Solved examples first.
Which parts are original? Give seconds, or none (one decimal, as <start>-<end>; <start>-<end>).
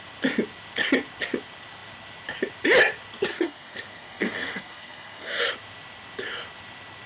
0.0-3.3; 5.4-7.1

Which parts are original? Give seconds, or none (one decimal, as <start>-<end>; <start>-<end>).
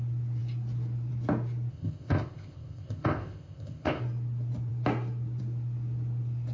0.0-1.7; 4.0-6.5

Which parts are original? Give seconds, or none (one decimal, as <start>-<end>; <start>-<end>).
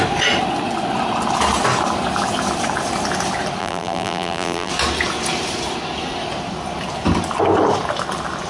0.0-3.6; 4.7-8.5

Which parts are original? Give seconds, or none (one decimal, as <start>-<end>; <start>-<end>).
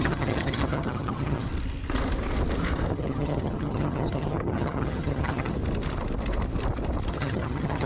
1.5-2.9; 5.6-7.1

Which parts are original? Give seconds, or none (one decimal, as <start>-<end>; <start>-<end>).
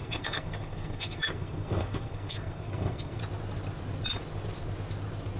3.2-5.4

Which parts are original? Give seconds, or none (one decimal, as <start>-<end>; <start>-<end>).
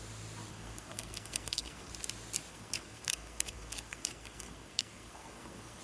0.0-0.5; 1.9-2.5